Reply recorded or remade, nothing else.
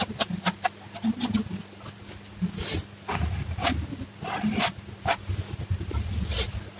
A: recorded